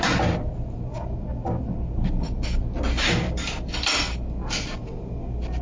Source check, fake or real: real